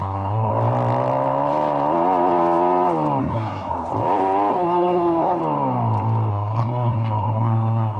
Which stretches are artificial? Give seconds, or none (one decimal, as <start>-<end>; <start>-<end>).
0.0-0.5; 3.2-3.9; 4.5-5.4; 6.3-8.0